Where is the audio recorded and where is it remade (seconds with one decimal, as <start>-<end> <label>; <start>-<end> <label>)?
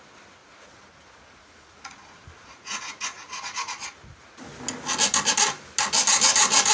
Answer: 0.0-0.4 recorded; 0.4-4.4 remade; 4.4-6.7 recorded